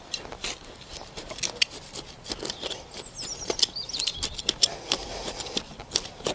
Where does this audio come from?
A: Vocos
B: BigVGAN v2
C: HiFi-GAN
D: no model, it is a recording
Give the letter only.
D